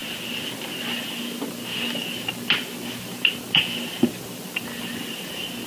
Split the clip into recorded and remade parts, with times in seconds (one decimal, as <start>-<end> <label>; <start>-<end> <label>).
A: 0.0-5.7 recorded